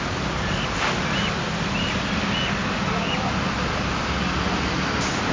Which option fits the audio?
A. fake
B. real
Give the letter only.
B